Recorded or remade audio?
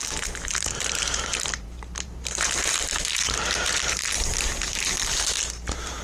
remade